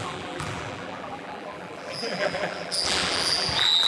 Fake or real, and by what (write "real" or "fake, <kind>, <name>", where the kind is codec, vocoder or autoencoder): fake, vocoder, BigVGAN v2